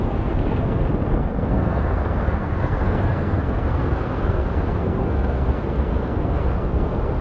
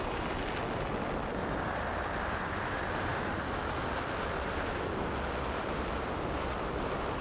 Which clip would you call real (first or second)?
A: second